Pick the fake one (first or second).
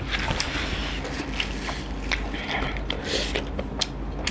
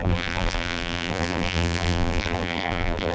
second